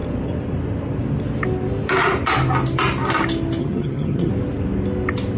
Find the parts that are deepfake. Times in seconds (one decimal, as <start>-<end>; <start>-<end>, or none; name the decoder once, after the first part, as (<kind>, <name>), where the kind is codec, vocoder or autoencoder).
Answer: 3.6-4.3 (vocoder, HiFi-GAN)